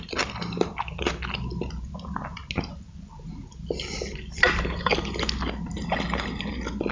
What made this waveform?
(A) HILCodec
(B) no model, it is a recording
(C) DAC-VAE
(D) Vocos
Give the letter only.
B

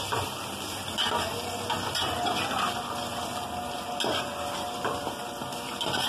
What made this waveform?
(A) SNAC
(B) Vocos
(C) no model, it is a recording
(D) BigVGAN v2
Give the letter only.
C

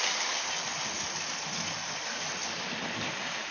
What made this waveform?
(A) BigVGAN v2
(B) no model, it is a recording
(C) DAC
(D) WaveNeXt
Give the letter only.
B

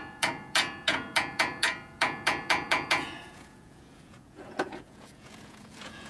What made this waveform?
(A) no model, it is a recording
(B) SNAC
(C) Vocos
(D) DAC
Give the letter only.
C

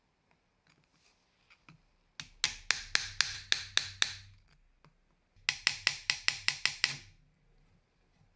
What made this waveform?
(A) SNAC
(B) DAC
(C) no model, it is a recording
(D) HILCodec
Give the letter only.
C